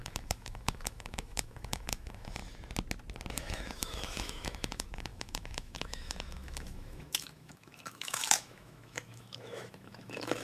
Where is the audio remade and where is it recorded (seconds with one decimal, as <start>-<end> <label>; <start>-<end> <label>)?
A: 0.0-2.4 remade; 2.4-3.3 recorded; 3.3-10.4 remade